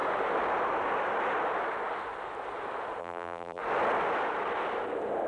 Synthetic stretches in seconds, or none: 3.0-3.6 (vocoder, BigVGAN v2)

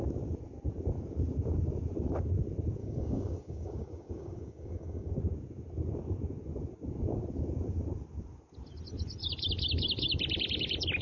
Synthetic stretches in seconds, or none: 2.8-5.1 (codec, DAC)

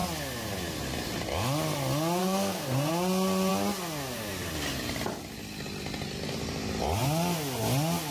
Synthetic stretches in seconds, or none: 2.2-2.9 (codec, SNAC)

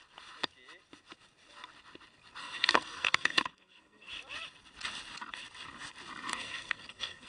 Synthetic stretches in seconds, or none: 2.4-4.1 (codec, SNAC); 6.3-7.3

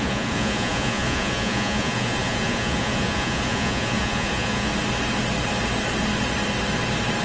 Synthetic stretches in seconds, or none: 0.0-4.7 (vocoder, Vocos)

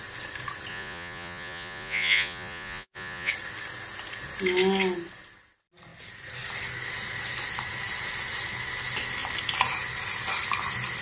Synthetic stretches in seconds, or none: 0.7-3.3 (vocoder, Vocos)